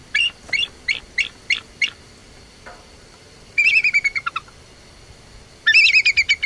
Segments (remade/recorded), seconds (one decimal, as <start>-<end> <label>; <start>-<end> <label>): 0.0-2.2 recorded; 2.2-4.3 remade; 4.3-6.5 recorded